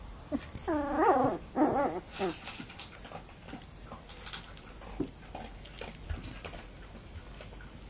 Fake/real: real